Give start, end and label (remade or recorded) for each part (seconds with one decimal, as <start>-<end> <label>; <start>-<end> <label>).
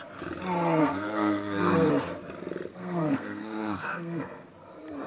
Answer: 0.0-0.8 recorded; 0.8-1.9 remade; 1.9-2.7 recorded; 2.7-4.5 remade; 4.5-5.1 recorded